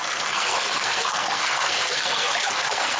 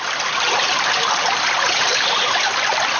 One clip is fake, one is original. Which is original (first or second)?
second